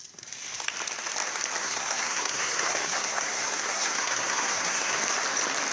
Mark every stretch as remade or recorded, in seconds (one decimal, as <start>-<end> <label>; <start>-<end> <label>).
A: 0.0-1.6 recorded; 1.6-5.0 remade; 5.0-5.7 recorded